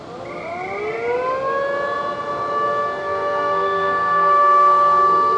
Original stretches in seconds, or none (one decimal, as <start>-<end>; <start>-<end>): 0.0-3.0